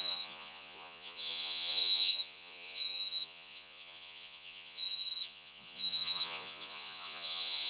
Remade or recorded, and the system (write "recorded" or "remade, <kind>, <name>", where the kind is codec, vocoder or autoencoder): remade, vocoder, Vocos